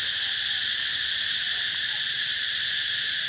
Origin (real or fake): fake